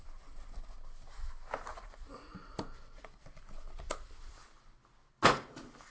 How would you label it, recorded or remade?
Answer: recorded